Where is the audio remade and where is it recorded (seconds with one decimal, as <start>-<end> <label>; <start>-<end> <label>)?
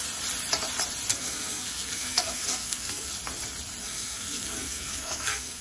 0.0-1.1 recorded; 1.1-3.1 remade; 3.1-3.8 recorded; 3.8-5.6 remade